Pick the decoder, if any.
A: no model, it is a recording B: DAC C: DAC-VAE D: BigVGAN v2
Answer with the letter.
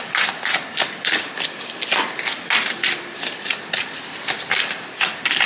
A